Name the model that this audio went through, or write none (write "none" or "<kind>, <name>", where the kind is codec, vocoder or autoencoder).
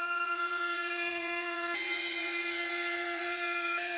vocoder, Vocos